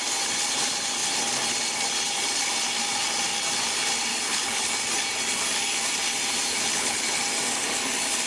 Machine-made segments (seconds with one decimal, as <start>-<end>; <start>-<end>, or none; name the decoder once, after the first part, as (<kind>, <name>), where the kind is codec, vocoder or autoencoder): 4.1-4.7 (codec, HILCodec); 6.5-7.2

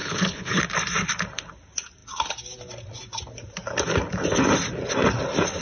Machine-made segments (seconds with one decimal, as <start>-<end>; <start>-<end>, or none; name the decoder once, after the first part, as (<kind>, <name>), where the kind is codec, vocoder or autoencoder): 0.0-0.6 (codec, HILCodec)

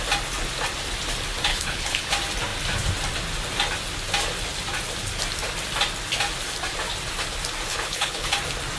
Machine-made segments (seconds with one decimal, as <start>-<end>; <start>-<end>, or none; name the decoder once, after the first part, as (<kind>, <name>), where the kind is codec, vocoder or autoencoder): 1.5-2.1 (codec, HILCodec); 7.7-8.3

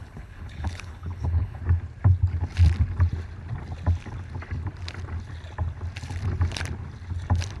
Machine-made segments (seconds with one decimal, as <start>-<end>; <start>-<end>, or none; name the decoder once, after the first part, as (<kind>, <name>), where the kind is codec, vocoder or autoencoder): 0.0-1.6 (codec, HILCodec)

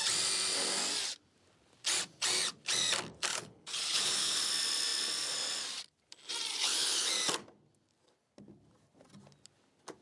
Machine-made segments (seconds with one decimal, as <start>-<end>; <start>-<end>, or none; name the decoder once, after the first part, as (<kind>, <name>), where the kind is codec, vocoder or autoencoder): 3.3-4.5 (codec, HILCodec); 6.5-7.1